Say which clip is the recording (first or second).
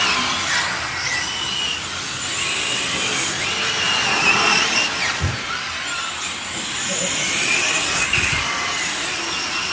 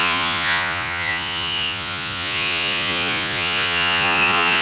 first